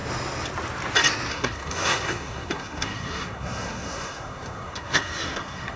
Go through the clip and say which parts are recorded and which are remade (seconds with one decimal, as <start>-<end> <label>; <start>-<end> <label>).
0.0-1.3 recorded; 1.3-5.8 remade